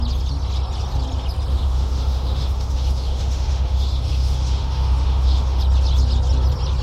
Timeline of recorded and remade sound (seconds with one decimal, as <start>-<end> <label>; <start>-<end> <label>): 0.0-1.5 recorded; 1.5-5.6 remade; 5.6-6.8 recorded